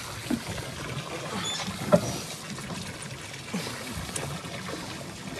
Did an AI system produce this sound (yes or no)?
no